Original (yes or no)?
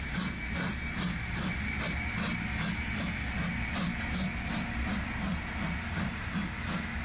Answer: yes